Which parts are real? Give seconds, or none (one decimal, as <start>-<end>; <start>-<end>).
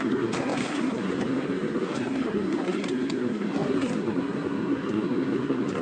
none